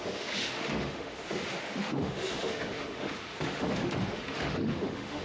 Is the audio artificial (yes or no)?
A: yes